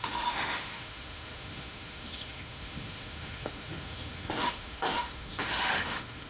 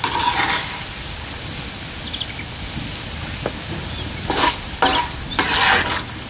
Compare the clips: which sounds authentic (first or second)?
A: second